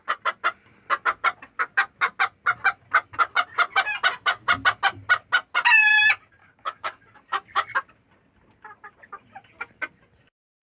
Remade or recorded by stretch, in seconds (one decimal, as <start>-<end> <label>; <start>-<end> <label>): 0.0-6.4 recorded; 6.4-7.0 remade; 7.0-10.6 recorded